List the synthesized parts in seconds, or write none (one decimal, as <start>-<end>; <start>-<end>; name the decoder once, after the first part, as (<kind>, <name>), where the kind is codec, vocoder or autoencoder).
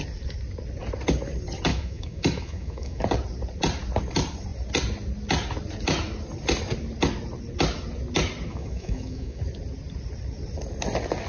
1.7-3.0 (autoencoder, DAC-VAE); 8.5-9.4